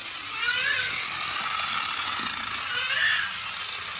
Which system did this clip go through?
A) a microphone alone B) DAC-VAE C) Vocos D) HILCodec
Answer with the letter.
A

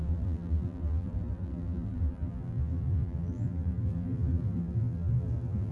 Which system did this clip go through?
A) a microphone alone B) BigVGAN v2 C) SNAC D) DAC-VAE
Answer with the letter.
B